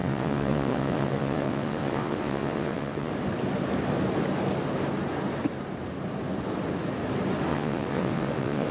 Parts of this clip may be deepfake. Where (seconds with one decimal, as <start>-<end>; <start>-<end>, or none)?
0.0-3.1; 7.5-8.7